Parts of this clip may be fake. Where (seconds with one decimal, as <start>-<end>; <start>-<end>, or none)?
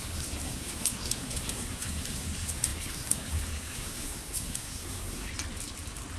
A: 0.0-5.3